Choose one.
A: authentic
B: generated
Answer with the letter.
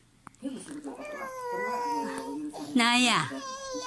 A